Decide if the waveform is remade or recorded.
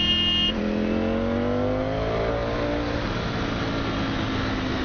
recorded